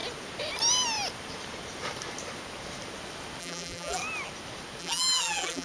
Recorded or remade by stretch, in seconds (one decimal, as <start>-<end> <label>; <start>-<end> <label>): 0.0-3.4 recorded; 3.4-4.0 remade; 4.0-4.8 recorded; 4.8-5.6 remade